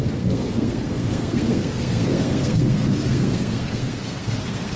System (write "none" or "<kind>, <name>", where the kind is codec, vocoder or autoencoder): codec, SNAC